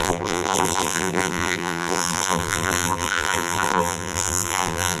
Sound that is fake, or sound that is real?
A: fake